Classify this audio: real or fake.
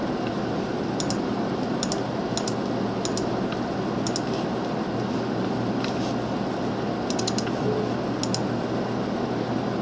real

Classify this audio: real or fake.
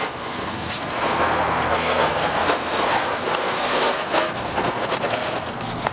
fake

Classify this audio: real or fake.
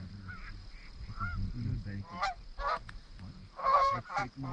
fake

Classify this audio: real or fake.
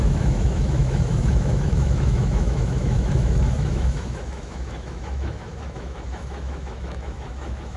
fake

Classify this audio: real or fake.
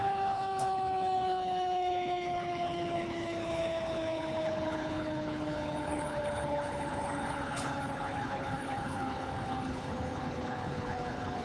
fake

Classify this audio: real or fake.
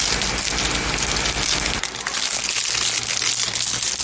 real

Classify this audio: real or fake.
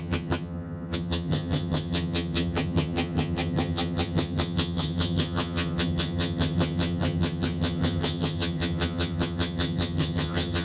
fake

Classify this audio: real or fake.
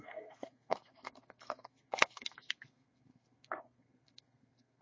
fake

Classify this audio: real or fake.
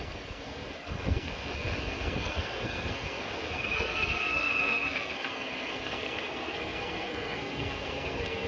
fake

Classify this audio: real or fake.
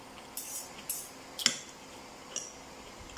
real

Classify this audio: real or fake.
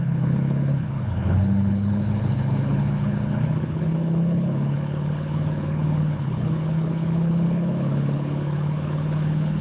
fake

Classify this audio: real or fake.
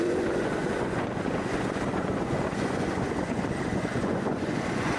fake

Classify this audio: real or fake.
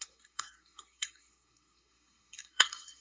fake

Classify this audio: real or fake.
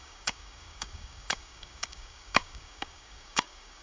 fake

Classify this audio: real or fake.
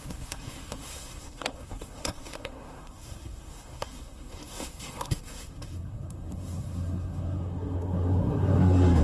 fake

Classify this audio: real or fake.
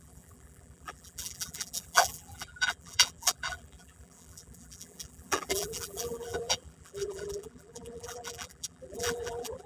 fake